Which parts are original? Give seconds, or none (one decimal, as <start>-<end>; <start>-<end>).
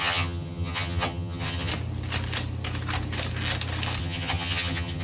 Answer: 1.7-4.0